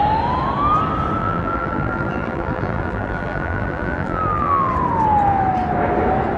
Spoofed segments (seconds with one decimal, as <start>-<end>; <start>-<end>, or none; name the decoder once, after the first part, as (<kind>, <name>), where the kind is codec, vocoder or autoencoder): 1.2-4.7 (vocoder, BigVGAN v2)